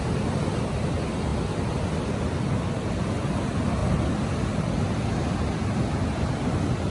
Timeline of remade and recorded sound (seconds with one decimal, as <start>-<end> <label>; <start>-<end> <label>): 0.0-6.9 recorded